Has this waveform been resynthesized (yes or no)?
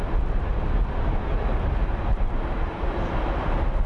no